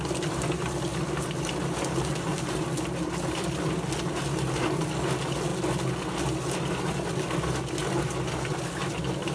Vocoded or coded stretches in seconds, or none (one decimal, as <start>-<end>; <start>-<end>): none